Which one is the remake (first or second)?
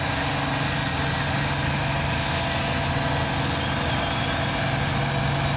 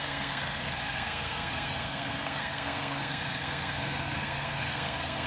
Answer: second